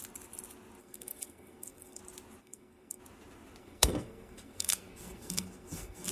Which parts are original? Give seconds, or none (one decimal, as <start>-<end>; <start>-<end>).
0.0-0.8; 2.0-2.4; 3.0-3.6

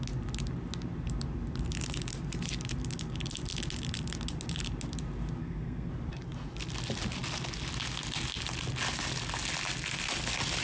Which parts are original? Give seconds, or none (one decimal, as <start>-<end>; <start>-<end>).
0.0-5.4; 5.9-10.6

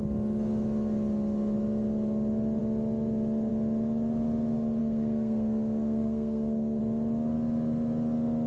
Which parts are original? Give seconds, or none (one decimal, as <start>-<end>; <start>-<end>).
0.0-4.8; 6.8-8.5

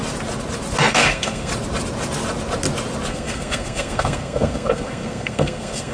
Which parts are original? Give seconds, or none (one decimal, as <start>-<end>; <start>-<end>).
0.0-0.9; 1.5-3.1

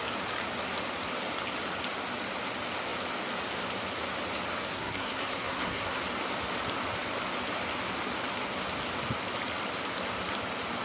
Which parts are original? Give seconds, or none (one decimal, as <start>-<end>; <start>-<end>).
0.0-4.7; 6.0-10.8

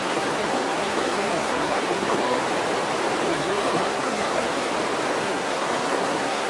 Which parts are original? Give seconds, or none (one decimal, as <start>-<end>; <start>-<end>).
2.4-3.3; 4.7-5.2